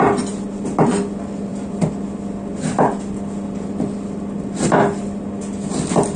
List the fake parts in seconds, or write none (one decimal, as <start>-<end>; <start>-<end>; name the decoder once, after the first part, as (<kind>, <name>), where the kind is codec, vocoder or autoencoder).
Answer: none